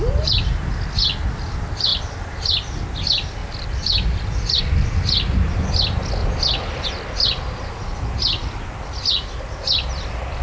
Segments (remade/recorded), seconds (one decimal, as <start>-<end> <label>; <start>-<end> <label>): 0.0-3.4 recorded; 3.4-4.6 remade; 4.6-6.2 recorded; 6.2-7.7 remade; 7.7-10.4 recorded